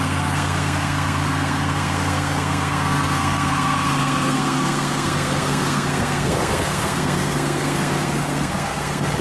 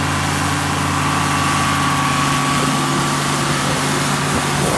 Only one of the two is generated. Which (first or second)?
first